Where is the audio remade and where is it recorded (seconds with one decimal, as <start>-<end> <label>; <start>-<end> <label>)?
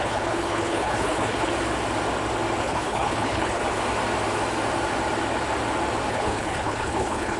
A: 0.0-1.5 remade; 1.5-2.6 recorded; 2.6-3.6 remade; 3.6-6.1 recorded; 6.1-7.4 remade